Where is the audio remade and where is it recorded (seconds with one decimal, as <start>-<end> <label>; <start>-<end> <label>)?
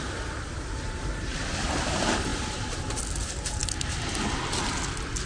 0.0-5.3 recorded